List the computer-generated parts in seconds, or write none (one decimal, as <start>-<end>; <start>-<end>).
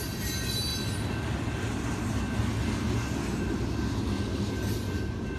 none